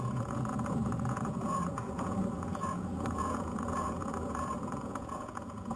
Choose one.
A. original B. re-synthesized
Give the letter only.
B